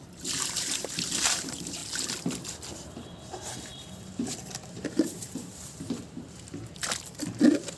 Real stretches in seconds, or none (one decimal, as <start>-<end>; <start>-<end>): 1.8-2.7; 6.8-7.8